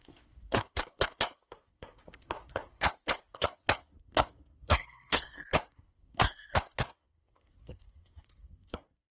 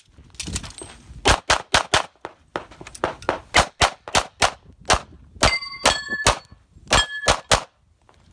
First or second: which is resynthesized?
first